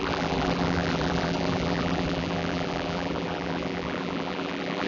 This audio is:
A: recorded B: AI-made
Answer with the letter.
B